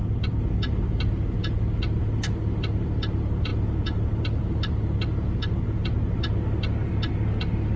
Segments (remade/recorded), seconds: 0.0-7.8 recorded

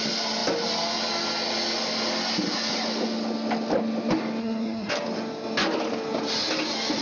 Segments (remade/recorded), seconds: 0.0-4.4 recorded; 4.4-4.9 remade; 4.9-7.0 recorded

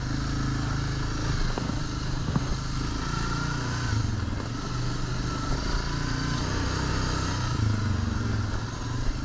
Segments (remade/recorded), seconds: 0.0-9.2 recorded

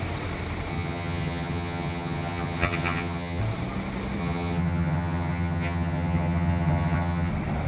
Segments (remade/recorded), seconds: 0.0-0.7 recorded; 0.7-3.4 remade; 3.4-4.2 recorded; 4.2-7.3 remade; 7.3-7.7 recorded

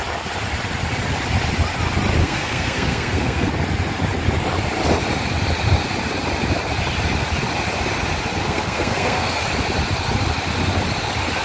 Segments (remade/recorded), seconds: 0.0-2.2 recorded; 2.2-3.5 remade; 3.5-8.4 recorded; 8.4-9.4 remade; 9.4-11.4 recorded

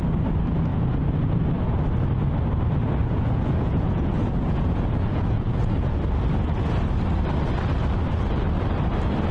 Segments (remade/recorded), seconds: 0.0-0.7 recorded; 0.7-1.8 remade; 1.8-3.0 recorded; 3.0-6.0 remade; 6.0-9.3 recorded